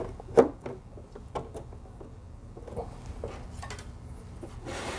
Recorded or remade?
recorded